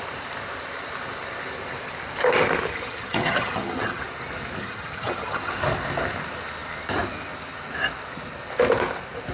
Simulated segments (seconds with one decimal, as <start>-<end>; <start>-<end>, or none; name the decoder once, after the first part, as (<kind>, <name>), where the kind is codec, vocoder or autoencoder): 2.7-4.0 (vocoder, HiFi-GAN); 4.6-5.5